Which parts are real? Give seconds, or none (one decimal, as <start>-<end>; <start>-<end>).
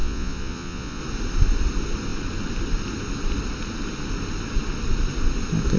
1.0-5.8